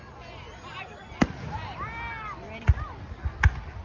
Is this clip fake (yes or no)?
no